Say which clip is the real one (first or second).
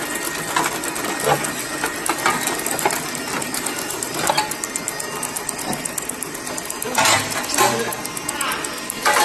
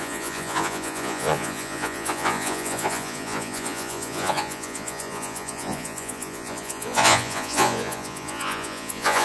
first